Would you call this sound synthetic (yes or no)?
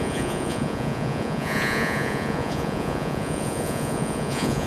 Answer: yes